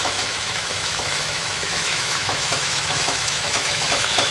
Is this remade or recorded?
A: remade